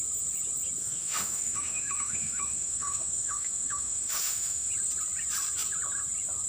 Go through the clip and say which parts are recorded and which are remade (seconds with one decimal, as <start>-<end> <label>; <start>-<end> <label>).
0.0-0.8 recorded; 0.8-4.7 remade; 4.7-6.5 recorded